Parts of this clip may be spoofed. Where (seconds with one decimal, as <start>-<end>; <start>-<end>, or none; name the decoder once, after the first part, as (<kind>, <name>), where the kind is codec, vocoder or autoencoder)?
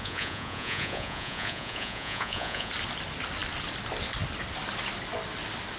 0.0-2.7 (vocoder, Vocos)